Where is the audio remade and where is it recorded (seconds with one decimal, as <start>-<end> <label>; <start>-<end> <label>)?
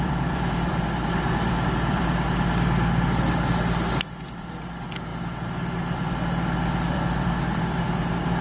0.0-5.1 remade; 5.1-5.8 recorded; 5.8-8.4 remade